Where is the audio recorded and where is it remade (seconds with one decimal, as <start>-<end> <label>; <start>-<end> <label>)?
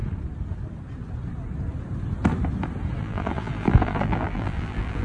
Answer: 0.0-3.0 recorded; 3.0-5.0 remade